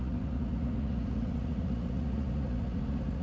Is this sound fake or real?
fake